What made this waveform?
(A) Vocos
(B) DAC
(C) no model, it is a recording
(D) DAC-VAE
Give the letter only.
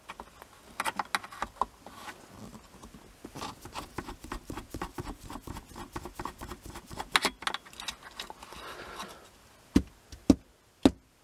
C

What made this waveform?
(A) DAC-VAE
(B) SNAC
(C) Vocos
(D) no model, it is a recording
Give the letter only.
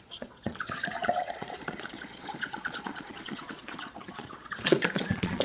C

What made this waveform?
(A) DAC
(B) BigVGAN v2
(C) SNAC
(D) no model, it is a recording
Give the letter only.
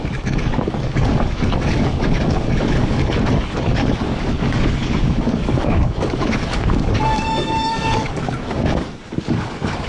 A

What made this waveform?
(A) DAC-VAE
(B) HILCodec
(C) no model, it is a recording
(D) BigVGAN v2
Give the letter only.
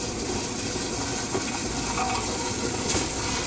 C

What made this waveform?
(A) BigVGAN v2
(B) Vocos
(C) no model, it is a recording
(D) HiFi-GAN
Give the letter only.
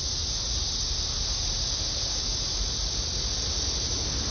C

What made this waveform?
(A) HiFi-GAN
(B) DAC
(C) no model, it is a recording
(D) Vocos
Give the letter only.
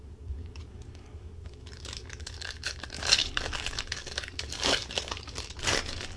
B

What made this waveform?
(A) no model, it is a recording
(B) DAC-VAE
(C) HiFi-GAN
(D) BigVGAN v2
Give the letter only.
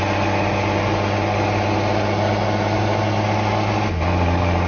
A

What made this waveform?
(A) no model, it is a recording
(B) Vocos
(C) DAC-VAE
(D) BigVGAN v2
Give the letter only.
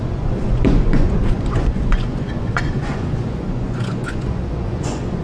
B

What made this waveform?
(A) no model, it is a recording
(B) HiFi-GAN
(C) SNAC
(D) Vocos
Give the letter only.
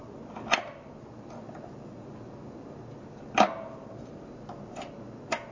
A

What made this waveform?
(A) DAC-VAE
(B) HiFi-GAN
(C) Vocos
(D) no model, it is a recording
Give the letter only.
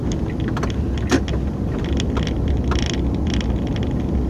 D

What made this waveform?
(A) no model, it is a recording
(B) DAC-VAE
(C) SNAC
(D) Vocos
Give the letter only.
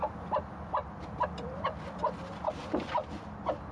A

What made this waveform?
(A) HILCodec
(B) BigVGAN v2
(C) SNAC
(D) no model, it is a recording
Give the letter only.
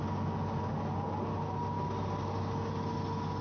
D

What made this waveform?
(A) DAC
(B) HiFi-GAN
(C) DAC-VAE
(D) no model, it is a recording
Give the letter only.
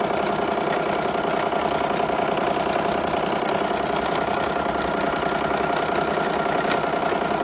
D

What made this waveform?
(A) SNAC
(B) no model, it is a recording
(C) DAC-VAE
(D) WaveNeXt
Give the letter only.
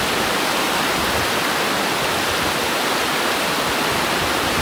B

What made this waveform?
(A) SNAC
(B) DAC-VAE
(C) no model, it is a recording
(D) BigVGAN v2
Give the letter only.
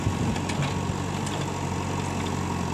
C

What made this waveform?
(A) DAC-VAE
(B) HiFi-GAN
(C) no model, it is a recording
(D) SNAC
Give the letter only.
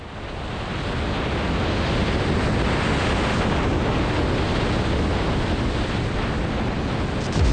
C